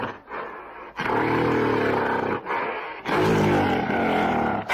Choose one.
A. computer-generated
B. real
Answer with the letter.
B